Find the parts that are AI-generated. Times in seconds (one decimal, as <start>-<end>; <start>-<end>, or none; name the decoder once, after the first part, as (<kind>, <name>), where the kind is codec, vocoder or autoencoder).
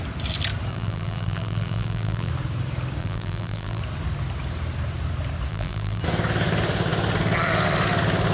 0.7-2.3 (vocoder, BigVGAN v2); 3.0-3.8; 5.5-6.0